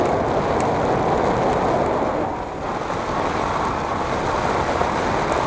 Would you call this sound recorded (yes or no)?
yes